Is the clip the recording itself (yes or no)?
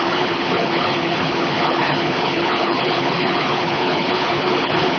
no